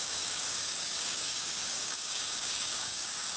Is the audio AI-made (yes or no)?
yes